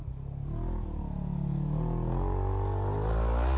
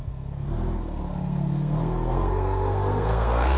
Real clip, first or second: first